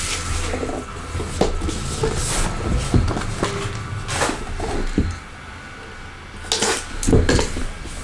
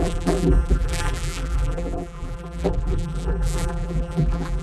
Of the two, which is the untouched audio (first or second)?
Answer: first